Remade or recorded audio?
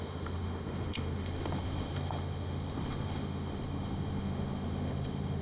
remade